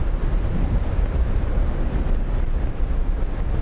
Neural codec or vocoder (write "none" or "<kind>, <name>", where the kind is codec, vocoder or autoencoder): none